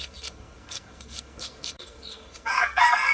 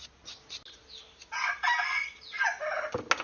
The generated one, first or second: first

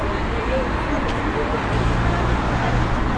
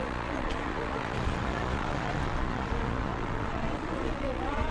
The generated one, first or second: second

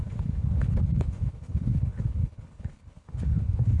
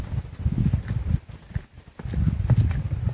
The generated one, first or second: first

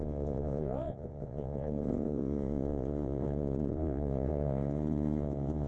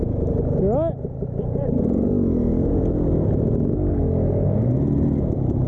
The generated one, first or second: first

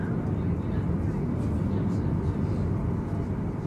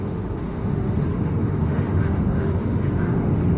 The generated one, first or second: second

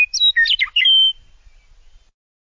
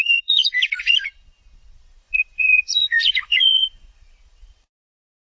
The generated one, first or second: second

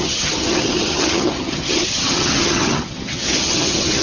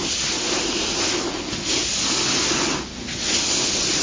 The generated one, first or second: first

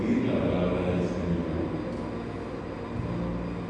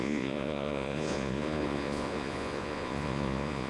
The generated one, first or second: second